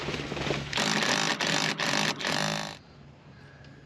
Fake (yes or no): no